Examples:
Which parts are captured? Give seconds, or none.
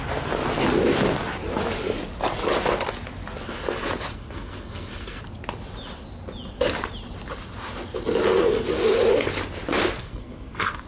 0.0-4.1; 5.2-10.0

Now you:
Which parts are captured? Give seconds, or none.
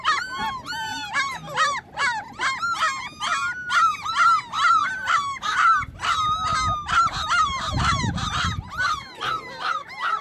0.0-10.2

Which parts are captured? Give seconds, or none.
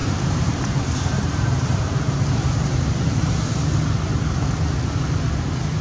3.5-5.8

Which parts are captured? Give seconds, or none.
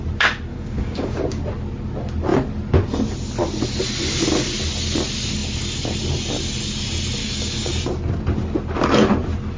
0.0-0.5; 1.4-7.2; 7.7-9.6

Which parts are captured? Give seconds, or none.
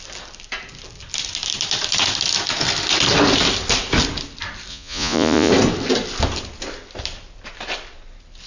0.0-4.7; 5.5-8.5